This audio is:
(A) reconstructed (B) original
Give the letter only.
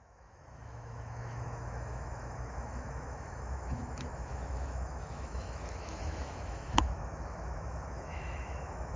A